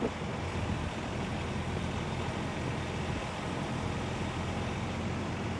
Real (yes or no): yes